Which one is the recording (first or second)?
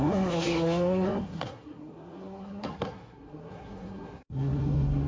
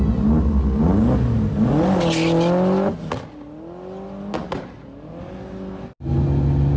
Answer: second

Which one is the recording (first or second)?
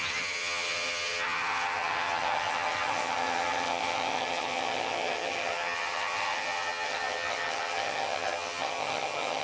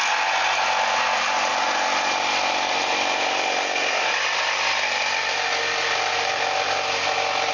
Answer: second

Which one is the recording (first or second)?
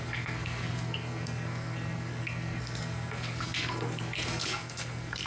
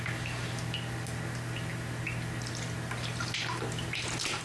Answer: second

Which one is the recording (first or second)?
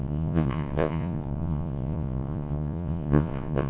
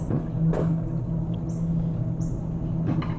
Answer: second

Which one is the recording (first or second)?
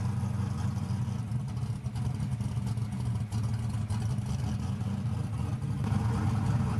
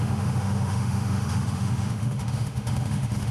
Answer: first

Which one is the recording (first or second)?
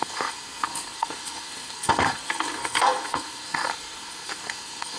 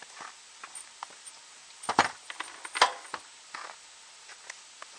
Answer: second